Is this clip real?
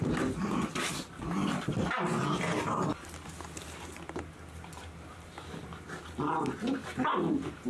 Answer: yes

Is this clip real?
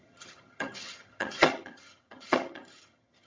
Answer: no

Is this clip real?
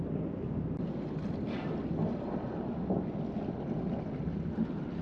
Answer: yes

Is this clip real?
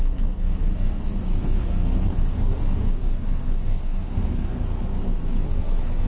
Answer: no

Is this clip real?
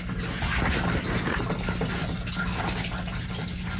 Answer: yes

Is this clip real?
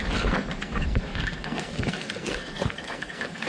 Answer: no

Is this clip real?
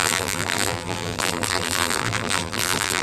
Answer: no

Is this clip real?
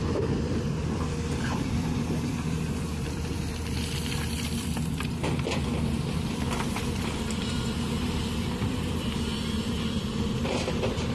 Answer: no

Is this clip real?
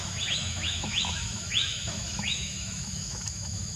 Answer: no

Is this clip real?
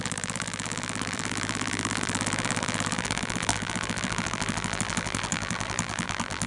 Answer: no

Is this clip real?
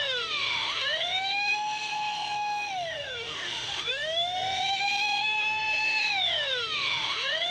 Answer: no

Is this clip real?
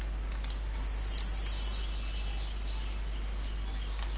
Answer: yes